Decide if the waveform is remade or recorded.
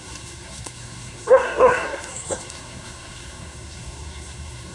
remade